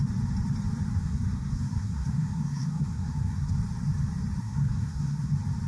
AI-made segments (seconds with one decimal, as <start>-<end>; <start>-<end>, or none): 1.0-3.5; 4.4-5.3